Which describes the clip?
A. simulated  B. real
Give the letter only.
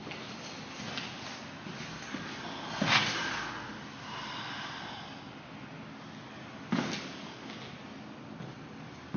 B